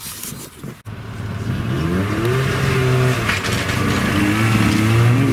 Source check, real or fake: real